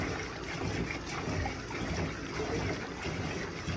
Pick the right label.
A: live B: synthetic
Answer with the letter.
A